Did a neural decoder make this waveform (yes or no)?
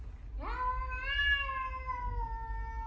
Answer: no